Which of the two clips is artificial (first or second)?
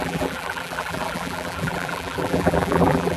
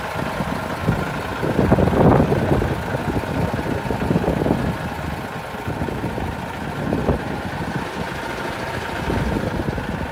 first